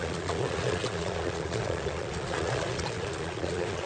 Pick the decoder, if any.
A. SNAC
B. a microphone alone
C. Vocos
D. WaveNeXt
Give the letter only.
C